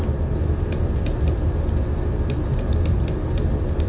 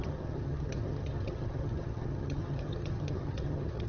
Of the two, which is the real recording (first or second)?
first